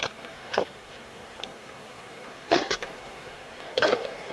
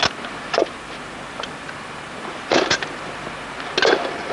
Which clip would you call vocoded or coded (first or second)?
first